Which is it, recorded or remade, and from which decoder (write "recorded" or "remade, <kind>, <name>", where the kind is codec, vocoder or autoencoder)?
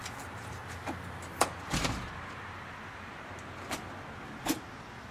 recorded